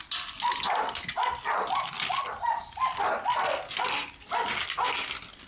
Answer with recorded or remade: recorded